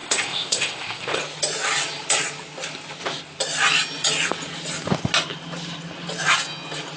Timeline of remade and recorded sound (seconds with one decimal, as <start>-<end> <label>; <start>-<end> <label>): 0.0-1.2 remade; 1.2-7.0 recorded